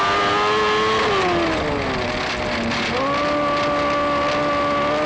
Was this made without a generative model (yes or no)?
yes